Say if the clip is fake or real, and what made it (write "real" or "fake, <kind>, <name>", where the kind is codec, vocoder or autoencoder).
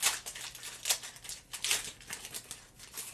real